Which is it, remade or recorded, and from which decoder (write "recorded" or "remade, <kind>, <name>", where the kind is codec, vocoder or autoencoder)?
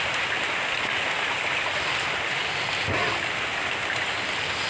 recorded